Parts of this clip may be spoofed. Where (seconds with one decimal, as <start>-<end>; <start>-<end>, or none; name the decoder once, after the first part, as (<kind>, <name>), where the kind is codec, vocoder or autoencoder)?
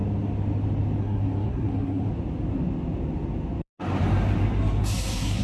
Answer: 1.0-2.1 (codec, SNAC); 4.8-5.4